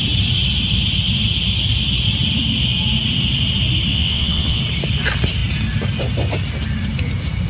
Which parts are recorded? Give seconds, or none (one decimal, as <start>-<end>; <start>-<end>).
0.0-3.9; 4.6-7.5